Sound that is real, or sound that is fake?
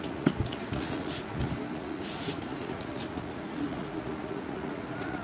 fake